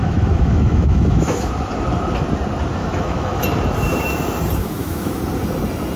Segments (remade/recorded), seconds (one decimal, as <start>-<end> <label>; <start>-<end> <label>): 0.0-1.5 remade; 1.5-2.8 recorded; 2.8-3.4 remade; 3.4-4.6 recorded; 4.6-5.2 remade; 5.2-6.0 recorded